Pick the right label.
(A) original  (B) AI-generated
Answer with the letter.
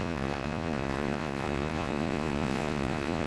B